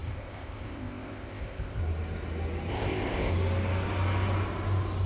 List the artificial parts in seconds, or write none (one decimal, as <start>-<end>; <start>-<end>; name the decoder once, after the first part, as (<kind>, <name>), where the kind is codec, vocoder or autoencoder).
0.0-1.8 (codec, ZipCodec); 2.7-3.3